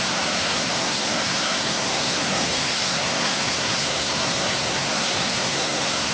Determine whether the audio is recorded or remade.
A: remade